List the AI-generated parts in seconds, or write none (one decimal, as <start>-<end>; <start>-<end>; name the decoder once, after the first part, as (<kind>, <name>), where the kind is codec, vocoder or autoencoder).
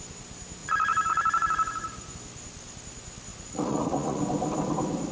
0.6-2.1 (vocoder, Vocos); 3.3-4.2